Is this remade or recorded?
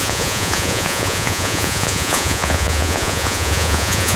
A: remade